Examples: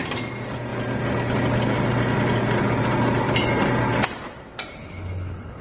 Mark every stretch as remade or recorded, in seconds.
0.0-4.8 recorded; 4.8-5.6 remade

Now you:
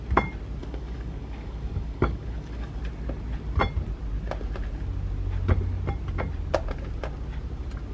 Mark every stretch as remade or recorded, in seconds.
0.0-0.6 recorded; 0.6-2.8 remade; 2.8-7.9 recorded